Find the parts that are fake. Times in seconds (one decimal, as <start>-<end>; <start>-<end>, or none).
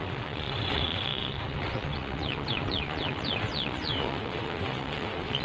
0.0-5.4